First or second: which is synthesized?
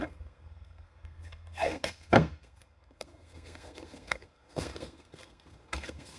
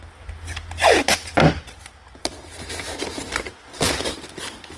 first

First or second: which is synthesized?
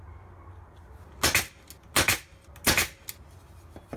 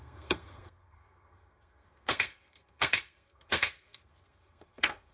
second